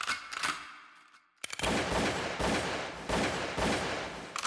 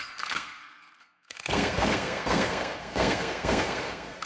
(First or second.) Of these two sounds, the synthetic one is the second